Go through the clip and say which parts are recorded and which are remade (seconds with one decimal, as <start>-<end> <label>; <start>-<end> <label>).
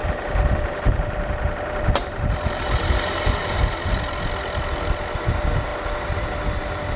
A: 0.0-3.9 remade; 3.9-7.0 recorded